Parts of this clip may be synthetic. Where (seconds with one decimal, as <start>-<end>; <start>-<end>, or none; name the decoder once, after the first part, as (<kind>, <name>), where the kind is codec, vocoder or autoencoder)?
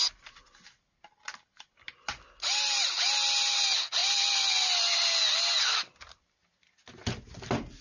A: none